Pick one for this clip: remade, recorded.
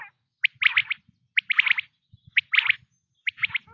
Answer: recorded